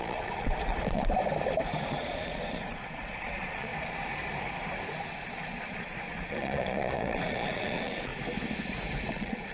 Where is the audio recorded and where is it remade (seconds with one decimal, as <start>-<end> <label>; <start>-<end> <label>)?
0.0-1.1 remade; 1.1-1.9 recorded; 1.9-3.7 remade; 3.7-5.1 recorded; 5.1-8.1 remade; 8.1-9.1 recorded; 9.1-9.5 remade